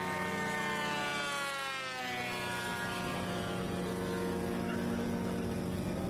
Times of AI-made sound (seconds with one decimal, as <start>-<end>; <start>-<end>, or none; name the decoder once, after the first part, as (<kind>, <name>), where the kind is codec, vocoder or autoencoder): none